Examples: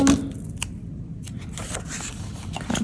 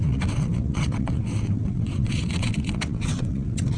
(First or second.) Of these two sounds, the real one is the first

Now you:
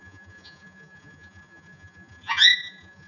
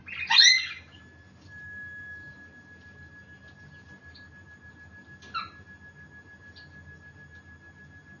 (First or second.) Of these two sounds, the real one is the second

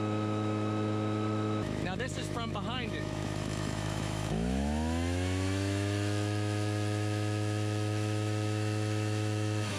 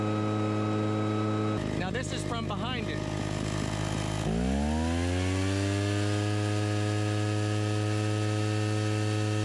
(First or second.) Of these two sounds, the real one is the second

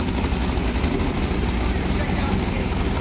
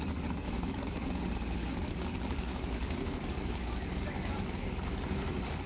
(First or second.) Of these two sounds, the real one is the first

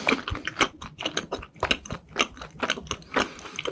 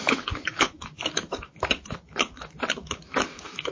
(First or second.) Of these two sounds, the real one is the first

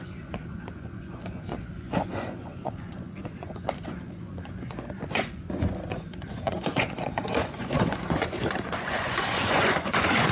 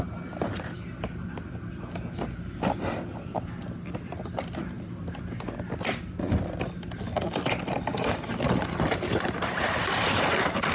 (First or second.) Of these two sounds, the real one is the second